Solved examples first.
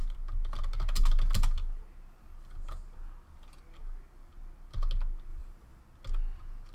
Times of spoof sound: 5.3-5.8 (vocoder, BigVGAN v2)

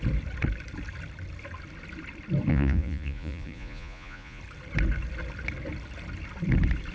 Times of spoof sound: 2.5-4.4 (vocoder, Vocos)